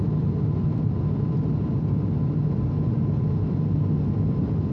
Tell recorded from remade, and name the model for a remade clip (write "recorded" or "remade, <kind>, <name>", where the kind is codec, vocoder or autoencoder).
recorded